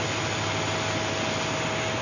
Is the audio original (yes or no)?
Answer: yes